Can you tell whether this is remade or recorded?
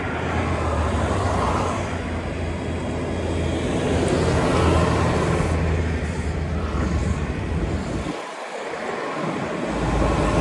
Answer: recorded